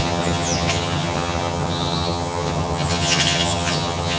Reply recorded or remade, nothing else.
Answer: remade